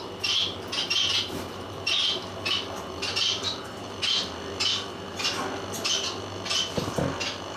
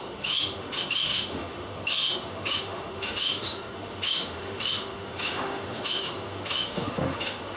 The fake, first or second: second